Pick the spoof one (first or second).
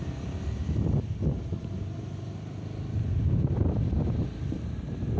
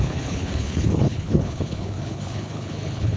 second